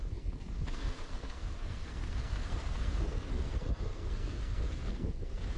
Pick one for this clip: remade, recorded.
remade